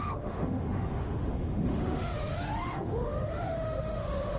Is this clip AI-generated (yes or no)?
yes